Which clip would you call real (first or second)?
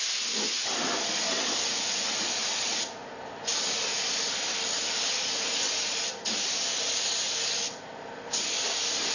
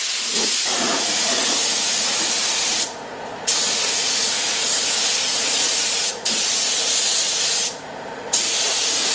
first